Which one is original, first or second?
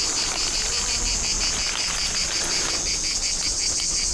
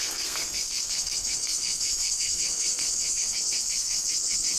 first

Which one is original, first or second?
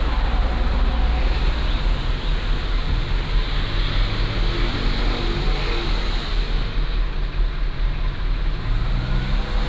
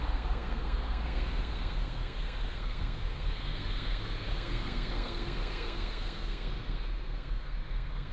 first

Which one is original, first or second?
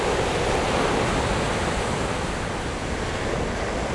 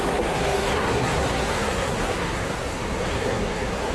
first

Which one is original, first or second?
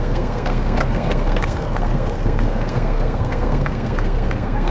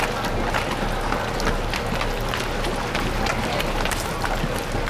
second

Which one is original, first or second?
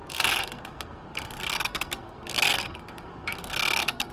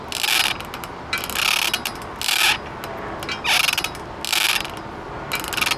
second